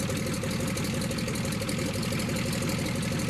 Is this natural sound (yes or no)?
yes